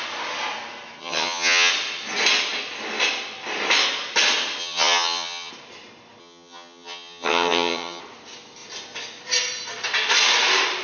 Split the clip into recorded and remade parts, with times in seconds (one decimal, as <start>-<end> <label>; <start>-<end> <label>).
0.0-1.0 recorded; 1.0-1.7 remade; 1.7-4.6 recorded; 4.6-5.5 remade; 5.5-6.2 recorded; 6.2-8.0 remade; 8.0-10.8 recorded